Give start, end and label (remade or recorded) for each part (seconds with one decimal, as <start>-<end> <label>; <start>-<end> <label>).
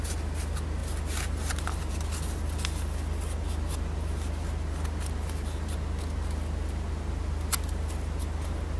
0.0-8.8 recorded